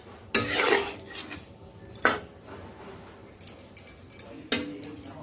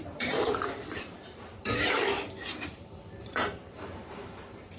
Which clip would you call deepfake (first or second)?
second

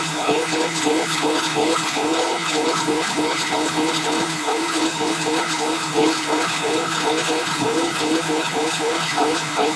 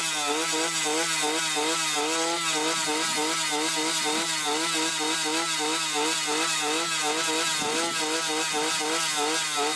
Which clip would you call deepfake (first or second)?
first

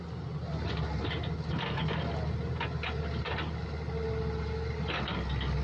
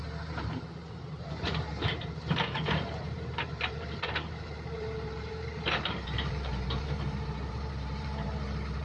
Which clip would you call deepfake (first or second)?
second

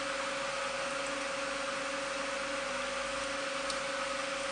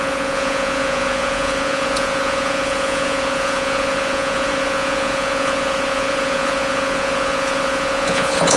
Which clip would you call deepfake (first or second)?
second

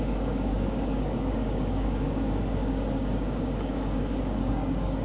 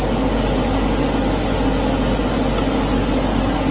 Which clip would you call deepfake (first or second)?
first